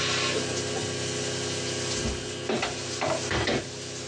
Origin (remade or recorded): recorded